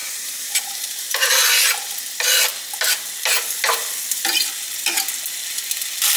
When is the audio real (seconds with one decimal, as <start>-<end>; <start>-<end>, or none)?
1.3-6.2